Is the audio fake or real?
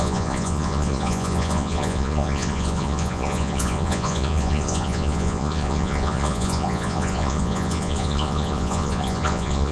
fake